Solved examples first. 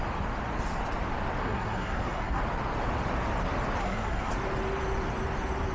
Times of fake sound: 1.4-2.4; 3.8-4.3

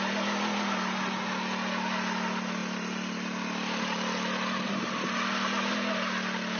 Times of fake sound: none

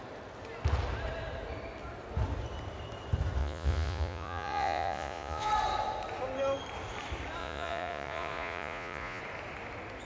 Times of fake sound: 3.4-5.5; 7.4-9.2

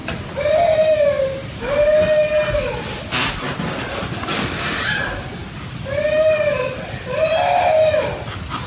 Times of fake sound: none

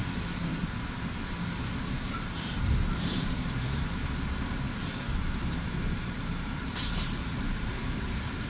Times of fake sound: 1.8-4.0; 5.1-8.5